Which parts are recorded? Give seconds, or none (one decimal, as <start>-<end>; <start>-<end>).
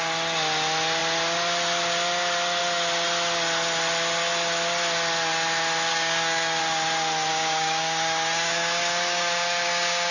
0.0-5.9; 6.6-7.3